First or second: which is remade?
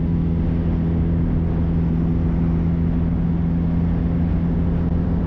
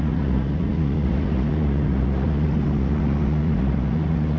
second